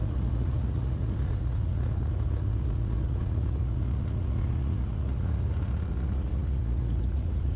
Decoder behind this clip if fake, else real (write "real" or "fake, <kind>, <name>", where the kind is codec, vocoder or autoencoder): fake, vocoder, Vocos